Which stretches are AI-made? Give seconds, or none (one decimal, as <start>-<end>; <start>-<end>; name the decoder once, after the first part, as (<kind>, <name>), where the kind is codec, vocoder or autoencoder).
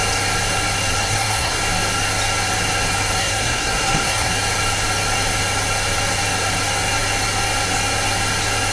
1.0-1.6 (codec, SNAC); 3.2-4.3